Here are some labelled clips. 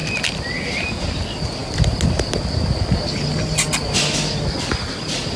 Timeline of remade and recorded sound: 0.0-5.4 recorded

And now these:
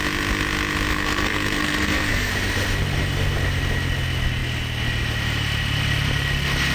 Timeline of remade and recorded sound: 0.0-0.9 recorded; 0.9-2.3 remade; 2.3-6.7 recorded

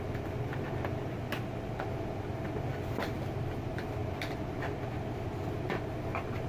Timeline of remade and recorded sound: 0.0-6.5 recorded

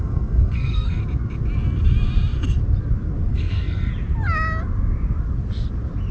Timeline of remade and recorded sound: 0.0-1.0 remade; 1.0-3.3 recorded; 3.3-3.9 remade; 3.9-6.1 recorded

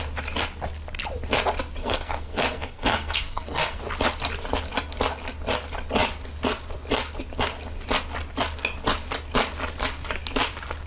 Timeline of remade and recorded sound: 0.0-1.8 recorded; 1.8-3.8 remade; 3.8-10.9 recorded